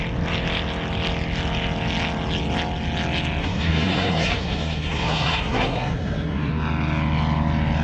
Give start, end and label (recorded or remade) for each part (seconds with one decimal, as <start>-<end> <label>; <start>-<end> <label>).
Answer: 0.0-3.4 recorded; 3.4-6.5 remade; 6.5-7.8 recorded